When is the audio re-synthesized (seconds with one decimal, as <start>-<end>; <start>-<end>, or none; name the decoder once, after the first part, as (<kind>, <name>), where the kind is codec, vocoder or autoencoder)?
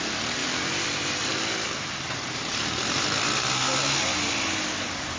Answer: none